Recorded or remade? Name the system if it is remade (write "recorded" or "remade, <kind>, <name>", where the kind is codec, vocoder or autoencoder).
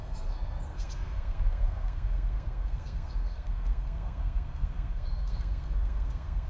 remade, codec, SNAC